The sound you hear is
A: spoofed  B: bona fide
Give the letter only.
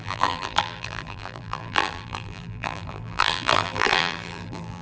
A